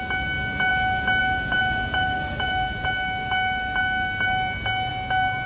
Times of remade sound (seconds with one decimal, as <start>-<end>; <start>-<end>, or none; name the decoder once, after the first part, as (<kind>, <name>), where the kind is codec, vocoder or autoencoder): none